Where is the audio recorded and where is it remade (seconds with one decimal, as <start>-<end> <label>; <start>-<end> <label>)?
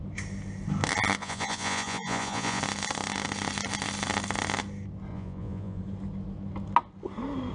0.0-1.2 recorded; 1.2-2.6 remade; 2.6-5.1 recorded; 5.1-5.8 remade; 5.8-7.5 recorded